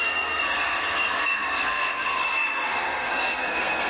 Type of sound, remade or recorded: remade